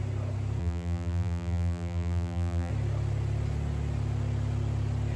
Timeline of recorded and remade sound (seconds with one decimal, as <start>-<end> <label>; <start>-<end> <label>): 0.0-0.6 recorded; 0.6-2.7 remade; 2.7-5.2 recorded